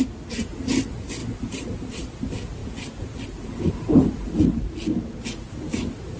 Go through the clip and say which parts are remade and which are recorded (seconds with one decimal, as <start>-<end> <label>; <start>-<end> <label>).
0.0-6.2 recorded